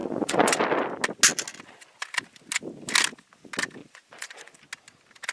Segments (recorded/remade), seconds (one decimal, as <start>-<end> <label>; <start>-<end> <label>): 0.0-0.5 remade; 0.5-3.8 recorded; 3.8-4.5 remade; 4.5-5.3 recorded